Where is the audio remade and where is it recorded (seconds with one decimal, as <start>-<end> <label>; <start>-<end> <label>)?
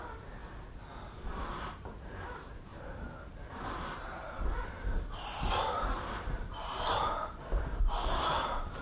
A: 0.0-0.4 remade; 0.4-1.1 recorded; 1.1-8.8 remade